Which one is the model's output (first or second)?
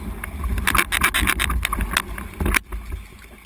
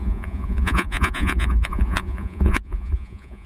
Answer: second